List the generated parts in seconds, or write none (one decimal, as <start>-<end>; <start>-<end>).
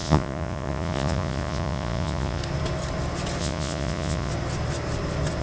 0.0-2.4; 3.4-4.3